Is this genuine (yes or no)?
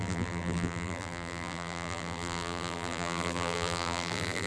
no